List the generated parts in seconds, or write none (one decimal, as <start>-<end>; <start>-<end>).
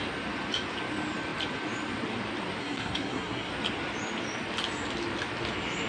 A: 2.6-3.5